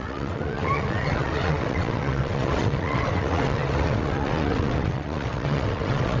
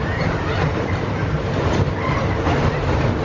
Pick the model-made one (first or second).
first